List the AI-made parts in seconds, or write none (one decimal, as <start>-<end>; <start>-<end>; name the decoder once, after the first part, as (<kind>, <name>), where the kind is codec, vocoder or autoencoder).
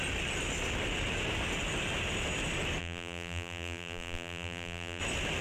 2.8-5.0 (vocoder, BigVGAN v2)